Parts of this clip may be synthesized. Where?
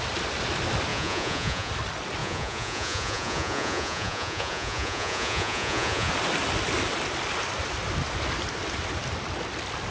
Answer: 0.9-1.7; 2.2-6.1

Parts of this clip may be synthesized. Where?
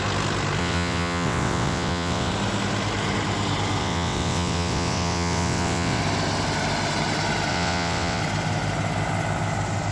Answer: 0.6-2.3; 3.8-6.0; 7.5-8.2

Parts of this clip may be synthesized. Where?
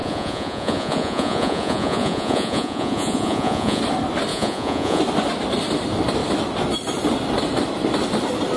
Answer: 0.0-3.8; 4.3-5.0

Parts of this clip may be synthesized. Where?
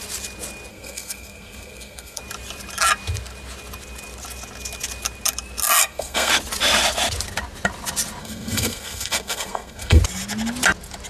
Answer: 0.7-2.2; 5.8-6.3; 8.2-10.0